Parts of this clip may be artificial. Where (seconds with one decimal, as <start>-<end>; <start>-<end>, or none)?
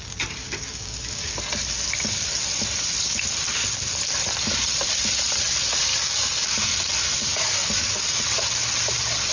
0.4-1.3; 5.9-6.7; 7.2-8.2